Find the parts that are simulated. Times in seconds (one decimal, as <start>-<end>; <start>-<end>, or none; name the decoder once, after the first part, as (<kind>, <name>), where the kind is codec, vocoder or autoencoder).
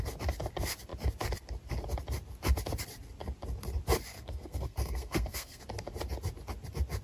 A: 4.1-5.6 (codec, SNAC)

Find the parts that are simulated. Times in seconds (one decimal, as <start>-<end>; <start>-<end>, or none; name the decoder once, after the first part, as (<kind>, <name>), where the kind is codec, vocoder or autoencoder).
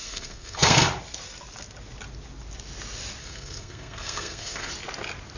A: 0.0-0.8 (codec, SNAC); 3.2-4.7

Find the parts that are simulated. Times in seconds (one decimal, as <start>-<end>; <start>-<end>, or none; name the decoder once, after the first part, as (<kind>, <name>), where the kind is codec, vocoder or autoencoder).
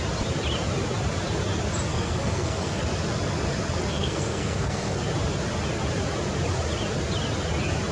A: 1.9-2.8 (codec, SNAC); 3.9-5.0